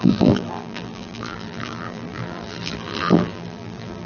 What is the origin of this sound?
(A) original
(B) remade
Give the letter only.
B